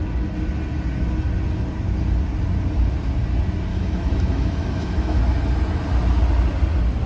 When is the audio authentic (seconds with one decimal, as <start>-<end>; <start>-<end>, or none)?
0.0-3.7; 5.2-7.1